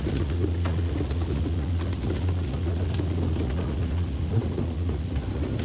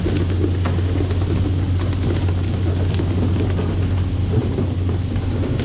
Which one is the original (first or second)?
second